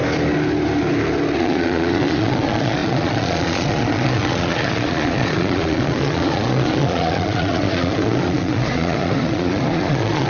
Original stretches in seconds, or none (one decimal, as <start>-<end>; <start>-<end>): 0.0-1.4